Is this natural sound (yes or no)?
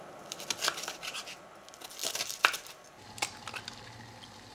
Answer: yes